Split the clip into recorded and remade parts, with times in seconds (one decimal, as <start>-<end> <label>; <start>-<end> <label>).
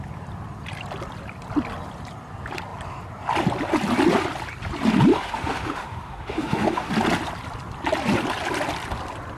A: 0.0-5.1 recorded; 5.1-6.9 remade; 6.9-9.4 recorded